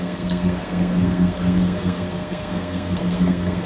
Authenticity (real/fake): fake